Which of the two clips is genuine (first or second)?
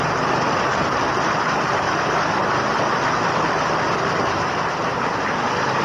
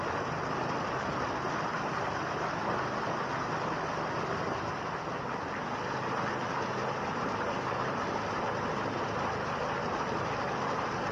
second